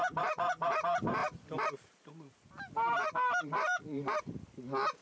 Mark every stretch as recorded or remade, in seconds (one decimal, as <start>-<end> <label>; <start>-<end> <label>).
0.0-1.2 recorded; 1.2-4.2 remade; 4.2-5.0 recorded